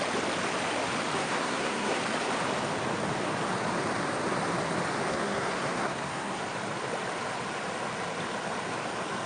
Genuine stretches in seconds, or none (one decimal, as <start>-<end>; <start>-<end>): 0.0-1.2; 2.0-5.1; 6.4-9.3